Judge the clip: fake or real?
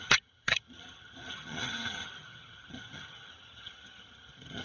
fake